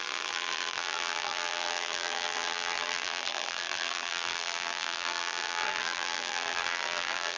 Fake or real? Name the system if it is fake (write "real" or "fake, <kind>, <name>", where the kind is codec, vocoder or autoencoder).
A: fake, vocoder, BigVGAN v2